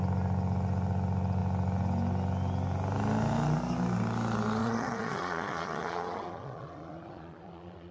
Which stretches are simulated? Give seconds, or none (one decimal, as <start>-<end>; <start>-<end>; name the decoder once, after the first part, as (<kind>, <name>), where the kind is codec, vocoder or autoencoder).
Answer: 4.6-7.9 (vocoder, Vocos)